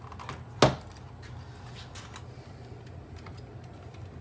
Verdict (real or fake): real